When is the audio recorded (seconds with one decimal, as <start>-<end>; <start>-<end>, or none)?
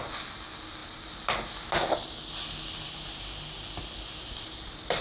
0.0-5.0